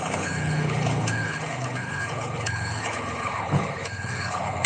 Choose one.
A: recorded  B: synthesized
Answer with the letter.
B